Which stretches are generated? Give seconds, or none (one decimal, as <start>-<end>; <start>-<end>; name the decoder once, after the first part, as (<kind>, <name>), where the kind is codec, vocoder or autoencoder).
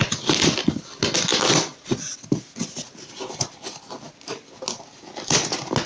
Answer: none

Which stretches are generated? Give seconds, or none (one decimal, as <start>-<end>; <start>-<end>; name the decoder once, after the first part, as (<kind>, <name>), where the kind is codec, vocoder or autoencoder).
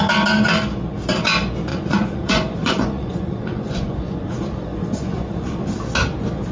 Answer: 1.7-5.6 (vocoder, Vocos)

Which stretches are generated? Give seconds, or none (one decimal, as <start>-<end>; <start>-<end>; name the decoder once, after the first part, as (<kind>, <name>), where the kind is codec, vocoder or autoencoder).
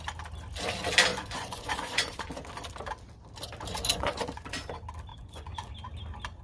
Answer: 1.1-2.2 (vocoder, Vocos); 3.9-4.5; 5.1-5.7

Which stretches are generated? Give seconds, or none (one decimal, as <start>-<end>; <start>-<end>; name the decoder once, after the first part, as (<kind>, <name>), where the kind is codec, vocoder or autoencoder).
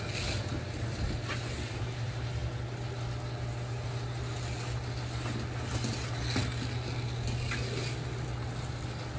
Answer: none